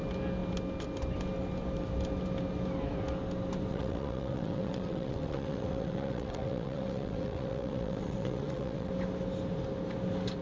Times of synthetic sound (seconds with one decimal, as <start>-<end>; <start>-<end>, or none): 3.7-8.9